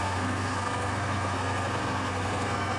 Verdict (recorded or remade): remade